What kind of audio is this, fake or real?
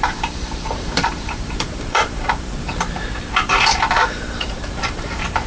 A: fake